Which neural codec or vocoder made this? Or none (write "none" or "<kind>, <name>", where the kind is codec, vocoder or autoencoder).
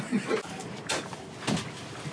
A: none